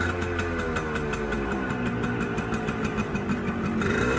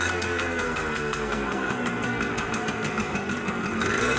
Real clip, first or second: first